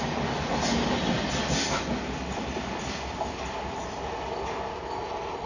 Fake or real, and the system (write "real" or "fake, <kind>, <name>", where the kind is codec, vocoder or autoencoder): real